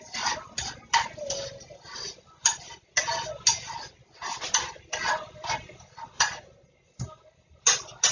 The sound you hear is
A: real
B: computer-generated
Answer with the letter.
A